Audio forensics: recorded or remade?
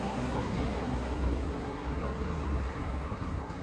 remade